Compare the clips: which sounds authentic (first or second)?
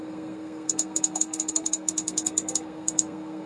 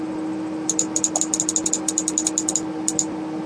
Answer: second